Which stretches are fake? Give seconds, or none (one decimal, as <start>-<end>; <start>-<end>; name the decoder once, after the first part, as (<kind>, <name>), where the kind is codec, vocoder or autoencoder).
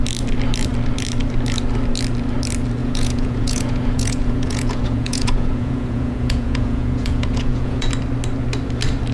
2.8-7.9 (vocoder, Vocos)